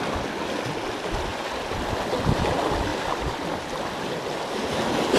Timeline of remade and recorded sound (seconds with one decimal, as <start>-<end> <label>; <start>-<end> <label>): 0.0-5.2 recorded